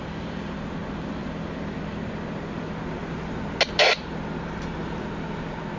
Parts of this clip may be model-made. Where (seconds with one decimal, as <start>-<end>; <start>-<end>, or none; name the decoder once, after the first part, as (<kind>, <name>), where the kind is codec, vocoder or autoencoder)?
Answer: none